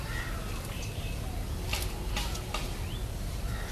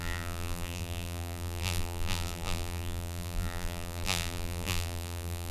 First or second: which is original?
first